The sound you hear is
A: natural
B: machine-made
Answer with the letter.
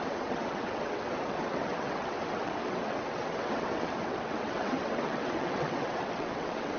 B